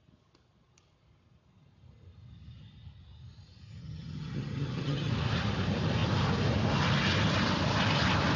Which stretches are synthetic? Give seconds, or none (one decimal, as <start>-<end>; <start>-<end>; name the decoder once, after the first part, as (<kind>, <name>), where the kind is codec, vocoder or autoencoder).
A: 3.8-5.1 (vocoder, HiFi-GAN)